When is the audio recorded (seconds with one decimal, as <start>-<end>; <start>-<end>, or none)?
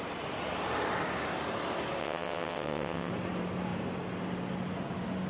0.0-2.0; 3.1-5.3